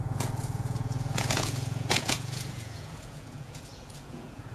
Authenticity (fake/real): fake